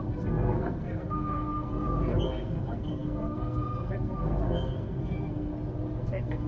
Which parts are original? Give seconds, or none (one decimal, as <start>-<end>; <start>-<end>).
5.5-6.0